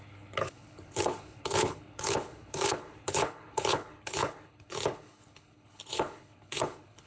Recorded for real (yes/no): no